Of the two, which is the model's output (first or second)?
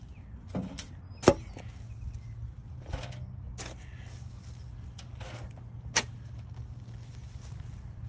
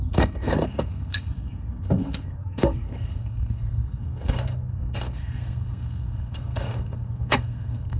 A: second